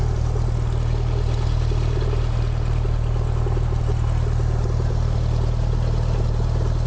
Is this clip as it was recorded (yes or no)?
yes